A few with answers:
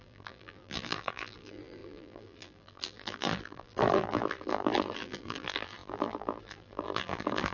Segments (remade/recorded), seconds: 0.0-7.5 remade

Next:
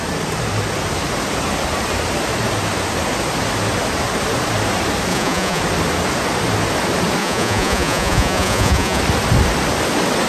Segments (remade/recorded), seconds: 0.0-5.1 recorded; 5.1-5.6 remade; 5.6-7.2 recorded; 7.2-9.0 remade; 9.0-10.3 recorded

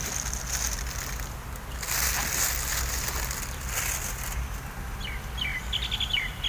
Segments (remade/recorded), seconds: 0.0-6.5 recorded

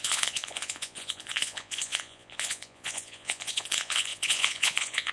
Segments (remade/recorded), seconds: 0.0-5.1 remade

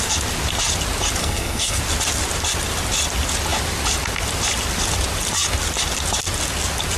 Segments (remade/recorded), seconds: 0.0-1.2 recorded; 1.2-1.8 remade; 1.8-7.0 recorded

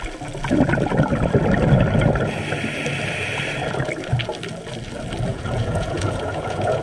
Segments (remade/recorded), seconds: 0.0-5.3 recorded; 5.3-6.8 remade

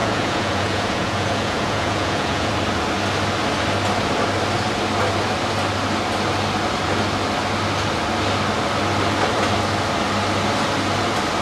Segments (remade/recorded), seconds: 0.0-2.5 remade; 2.5-11.4 recorded

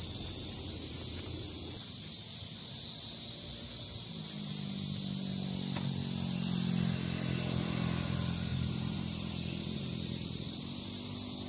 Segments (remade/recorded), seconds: 0.0-8.5 recorded; 8.5-10.8 remade; 10.8-11.5 recorded